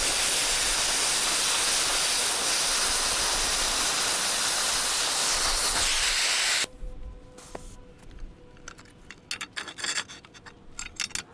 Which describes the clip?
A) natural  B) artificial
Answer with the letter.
A